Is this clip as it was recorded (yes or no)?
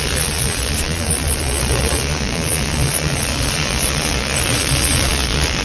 no